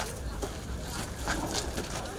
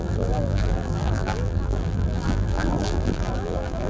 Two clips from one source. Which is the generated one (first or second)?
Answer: second